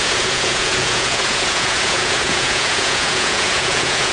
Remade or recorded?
remade